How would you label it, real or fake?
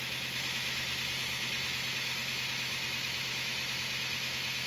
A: fake